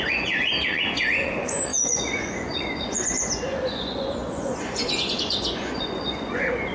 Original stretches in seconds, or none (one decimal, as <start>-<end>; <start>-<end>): none